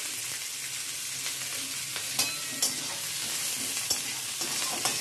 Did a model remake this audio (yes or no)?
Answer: no